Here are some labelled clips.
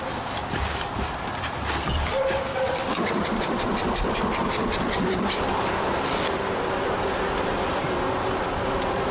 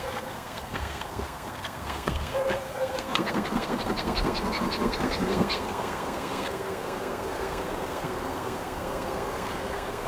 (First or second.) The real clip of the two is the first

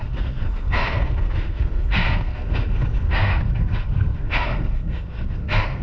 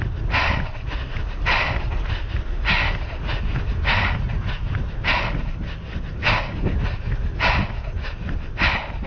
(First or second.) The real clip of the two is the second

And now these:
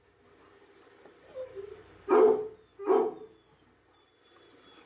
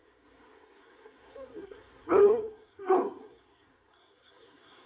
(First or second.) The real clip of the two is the first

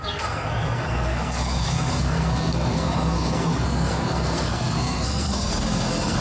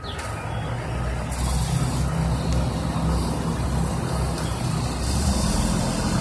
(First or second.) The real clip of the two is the second